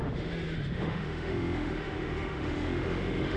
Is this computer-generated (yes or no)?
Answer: yes